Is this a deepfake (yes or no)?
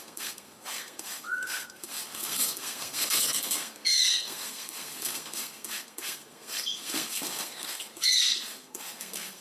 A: yes